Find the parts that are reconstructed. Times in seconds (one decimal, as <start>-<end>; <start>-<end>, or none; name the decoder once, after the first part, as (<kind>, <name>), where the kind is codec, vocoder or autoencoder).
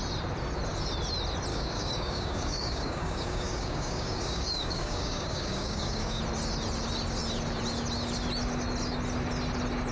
1.5-6.2 (codec, DAC)